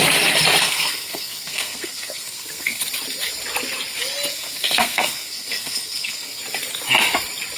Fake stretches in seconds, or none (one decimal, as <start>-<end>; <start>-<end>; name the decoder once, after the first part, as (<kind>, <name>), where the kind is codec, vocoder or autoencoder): 0.6-2.8 (codec, SNAC); 4.3-6.4